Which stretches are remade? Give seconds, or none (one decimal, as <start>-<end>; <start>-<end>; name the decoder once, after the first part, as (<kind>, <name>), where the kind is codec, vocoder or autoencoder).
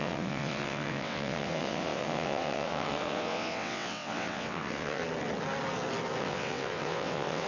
0.0-5.0 (vocoder, WaveNeXt); 6.2-7.5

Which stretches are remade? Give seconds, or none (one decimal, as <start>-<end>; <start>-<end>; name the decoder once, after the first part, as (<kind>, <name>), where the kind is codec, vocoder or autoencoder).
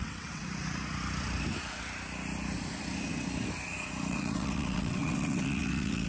0.0-0.4 (vocoder, WaveNeXt); 4.1-6.1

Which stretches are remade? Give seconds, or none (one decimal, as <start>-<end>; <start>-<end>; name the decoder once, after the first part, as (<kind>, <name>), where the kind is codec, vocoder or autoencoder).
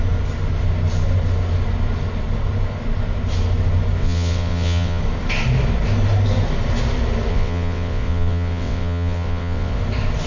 4.0-5.0 (vocoder, WaveNeXt); 7.3-9.8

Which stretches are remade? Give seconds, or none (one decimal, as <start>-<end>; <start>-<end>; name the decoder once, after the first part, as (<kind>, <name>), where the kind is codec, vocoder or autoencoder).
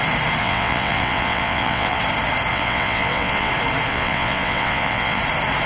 0.4-2.0 (vocoder, WaveNeXt); 2.5-3.5; 3.9-5.2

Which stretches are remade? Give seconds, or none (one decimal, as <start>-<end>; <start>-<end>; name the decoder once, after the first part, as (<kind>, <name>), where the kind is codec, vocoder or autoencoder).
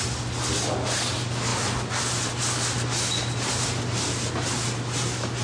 none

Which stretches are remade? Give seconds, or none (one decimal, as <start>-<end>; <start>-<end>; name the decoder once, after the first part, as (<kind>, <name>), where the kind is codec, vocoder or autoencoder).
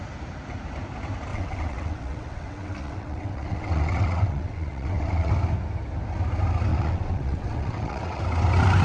1.3-5.3 (vocoder, WaveNeXt); 6.7-8.2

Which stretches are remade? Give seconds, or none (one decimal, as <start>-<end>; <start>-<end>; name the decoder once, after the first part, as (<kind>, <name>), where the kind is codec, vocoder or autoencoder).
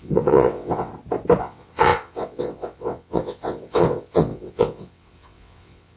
0.0-0.9 (vocoder, WaveNeXt); 1.4-6.0